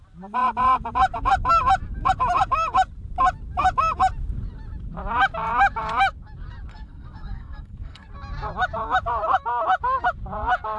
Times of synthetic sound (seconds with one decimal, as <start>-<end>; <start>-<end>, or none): 6.7-8.1